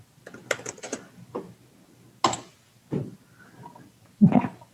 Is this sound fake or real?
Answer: real